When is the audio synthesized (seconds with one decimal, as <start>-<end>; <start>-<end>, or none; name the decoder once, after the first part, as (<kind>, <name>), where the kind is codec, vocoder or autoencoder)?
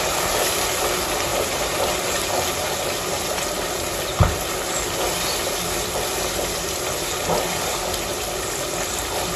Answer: 1.3-1.9 (vocoder, BigVGAN v2)